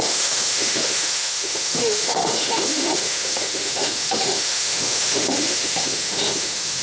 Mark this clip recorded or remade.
remade